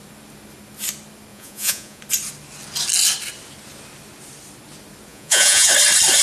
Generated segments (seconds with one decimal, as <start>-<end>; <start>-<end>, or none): 1.3-2.0; 5.1-5.7